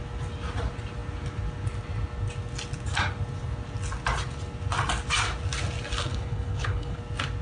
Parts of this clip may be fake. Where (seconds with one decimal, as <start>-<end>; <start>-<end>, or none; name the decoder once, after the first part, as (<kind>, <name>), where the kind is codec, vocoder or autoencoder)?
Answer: 6.1-7.0 (codec, HILCodec)